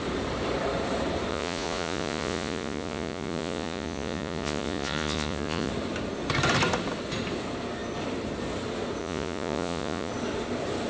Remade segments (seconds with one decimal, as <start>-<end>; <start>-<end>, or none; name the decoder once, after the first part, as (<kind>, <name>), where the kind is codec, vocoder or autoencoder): 1.3-5.7 (vocoder, Vocos); 9.0-10.1